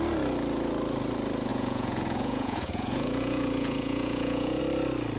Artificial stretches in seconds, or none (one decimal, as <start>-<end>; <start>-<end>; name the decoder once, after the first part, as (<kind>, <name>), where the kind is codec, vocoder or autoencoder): 1.5-4.6 (vocoder, Vocos)